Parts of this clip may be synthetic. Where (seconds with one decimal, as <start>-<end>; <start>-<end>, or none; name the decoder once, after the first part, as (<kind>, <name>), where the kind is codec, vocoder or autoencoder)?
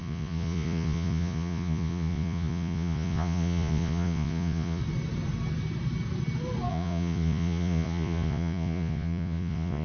0.0-4.8 (vocoder, Vocos); 6.7-9.8